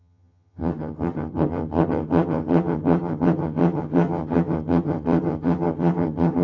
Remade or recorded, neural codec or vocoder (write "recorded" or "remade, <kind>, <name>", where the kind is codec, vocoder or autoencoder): remade, vocoder, HiFi-GAN